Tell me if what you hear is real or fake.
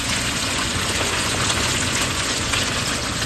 fake